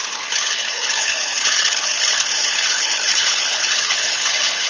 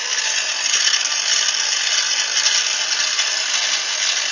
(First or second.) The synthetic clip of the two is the first